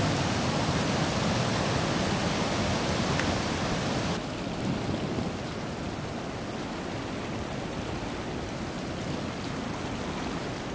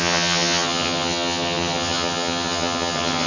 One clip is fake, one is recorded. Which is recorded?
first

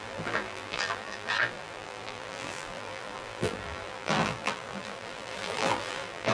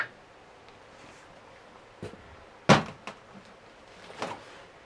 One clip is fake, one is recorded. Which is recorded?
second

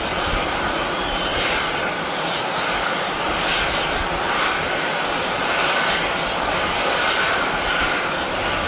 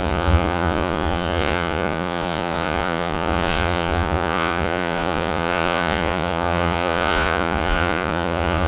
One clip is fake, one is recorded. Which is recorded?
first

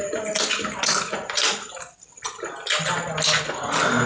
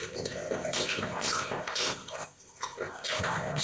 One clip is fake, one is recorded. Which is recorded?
first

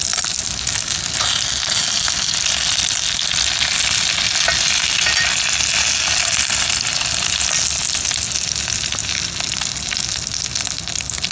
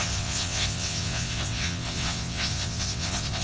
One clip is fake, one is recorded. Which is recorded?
first